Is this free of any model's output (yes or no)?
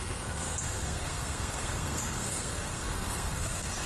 no